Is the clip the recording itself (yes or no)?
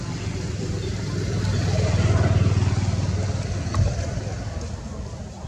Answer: yes